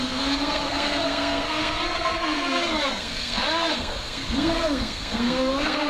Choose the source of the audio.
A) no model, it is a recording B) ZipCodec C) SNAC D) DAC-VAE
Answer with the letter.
C